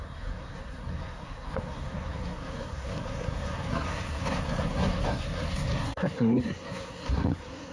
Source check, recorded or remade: remade